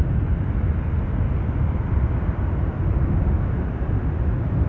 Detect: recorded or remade recorded